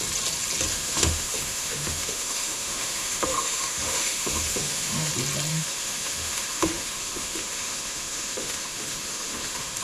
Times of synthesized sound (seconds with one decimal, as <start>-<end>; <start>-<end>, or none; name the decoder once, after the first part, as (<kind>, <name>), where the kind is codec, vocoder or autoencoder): 0.7-5.1 (autoencoder, DAC-VAE); 5.5-9.8